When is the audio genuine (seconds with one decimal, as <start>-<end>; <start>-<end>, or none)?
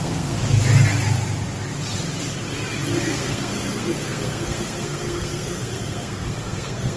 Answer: 0.4-3.0